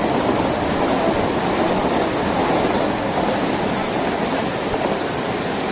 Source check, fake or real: real